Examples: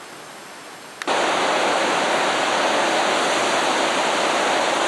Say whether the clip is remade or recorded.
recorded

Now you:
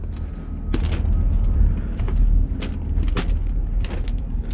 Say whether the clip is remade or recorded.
recorded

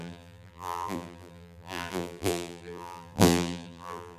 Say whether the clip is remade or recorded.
remade